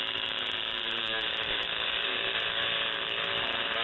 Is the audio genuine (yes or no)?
no